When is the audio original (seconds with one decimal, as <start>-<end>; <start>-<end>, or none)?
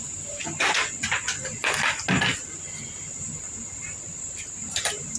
0.4-3.0